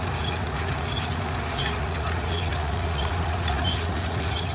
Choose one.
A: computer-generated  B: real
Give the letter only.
A